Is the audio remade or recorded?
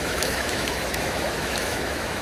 remade